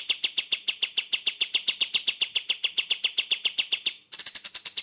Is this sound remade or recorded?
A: recorded